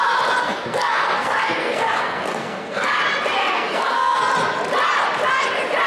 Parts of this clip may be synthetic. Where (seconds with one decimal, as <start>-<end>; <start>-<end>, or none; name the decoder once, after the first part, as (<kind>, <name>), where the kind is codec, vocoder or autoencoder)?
0.4-3.0 (codec, SNAC); 3.4-4.2